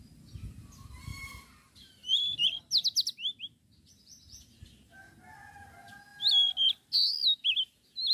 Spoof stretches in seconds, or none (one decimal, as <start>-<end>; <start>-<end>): 1.1-2.6